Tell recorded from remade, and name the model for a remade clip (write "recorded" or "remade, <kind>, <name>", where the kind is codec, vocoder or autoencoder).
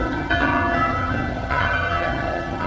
remade, vocoder, HiFi-GAN